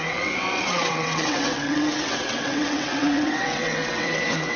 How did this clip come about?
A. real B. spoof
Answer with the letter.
B